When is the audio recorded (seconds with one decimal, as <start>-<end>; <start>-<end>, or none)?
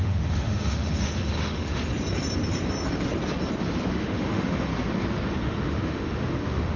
1.9-3.9; 4.7-5.3